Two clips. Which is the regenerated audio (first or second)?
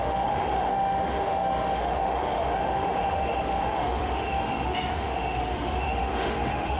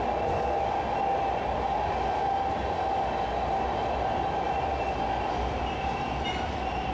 first